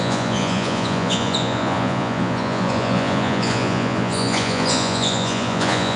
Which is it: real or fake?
fake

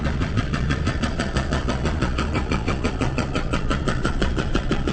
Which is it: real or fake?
fake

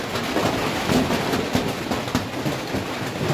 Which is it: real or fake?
real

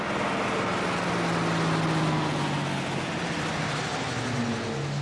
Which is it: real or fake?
real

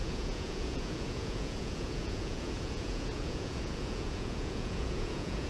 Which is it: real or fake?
fake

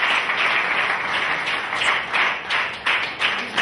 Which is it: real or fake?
fake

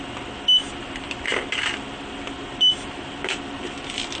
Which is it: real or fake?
real